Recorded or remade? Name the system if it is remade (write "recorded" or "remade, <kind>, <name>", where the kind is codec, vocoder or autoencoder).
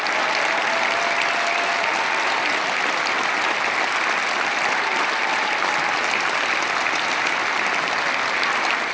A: recorded